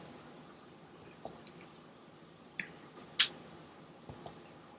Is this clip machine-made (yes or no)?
no